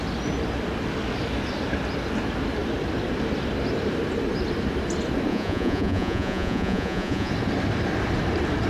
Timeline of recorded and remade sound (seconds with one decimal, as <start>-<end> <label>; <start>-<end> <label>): 0.0-5.3 recorded; 5.3-7.3 remade; 7.3-8.7 recorded